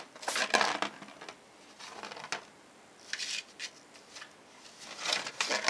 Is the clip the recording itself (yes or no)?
yes